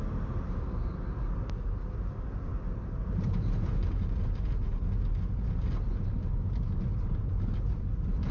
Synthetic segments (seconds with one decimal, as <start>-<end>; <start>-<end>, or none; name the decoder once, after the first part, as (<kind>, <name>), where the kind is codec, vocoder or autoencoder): none